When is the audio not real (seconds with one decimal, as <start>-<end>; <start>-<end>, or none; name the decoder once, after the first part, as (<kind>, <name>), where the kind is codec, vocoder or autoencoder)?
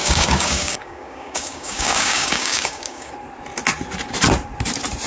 0.0-3.1 (codec, DAC)